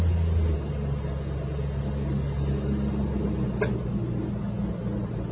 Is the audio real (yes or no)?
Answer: yes